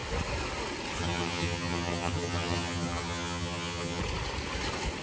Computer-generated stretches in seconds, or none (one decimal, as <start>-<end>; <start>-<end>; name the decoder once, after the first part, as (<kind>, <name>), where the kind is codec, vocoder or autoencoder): 1.0-4.0 (vocoder, HiFi-GAN)